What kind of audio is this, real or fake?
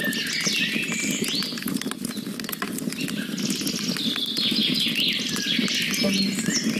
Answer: real